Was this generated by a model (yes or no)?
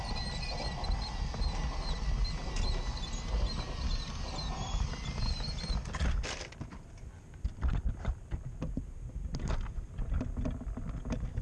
no